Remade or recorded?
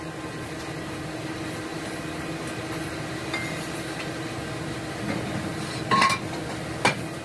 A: recorded